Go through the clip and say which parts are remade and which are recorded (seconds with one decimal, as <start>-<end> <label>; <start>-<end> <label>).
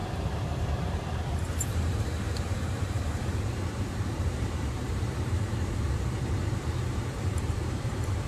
0.0-8.3 remade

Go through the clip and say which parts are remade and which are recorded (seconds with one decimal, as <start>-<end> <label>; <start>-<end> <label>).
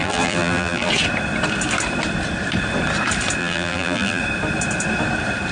0.0-0.9 remade; 0.9-3.4 recorded; 3.4-4.2 remade; 4.2-5.5 recorded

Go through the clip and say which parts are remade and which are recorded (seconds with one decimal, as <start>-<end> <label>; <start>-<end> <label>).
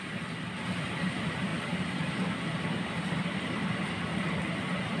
0.0-1.5 recorded; 1.5-3.9 remade; 3.9-5.0 recorded